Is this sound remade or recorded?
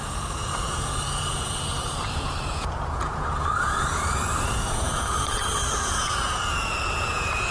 remade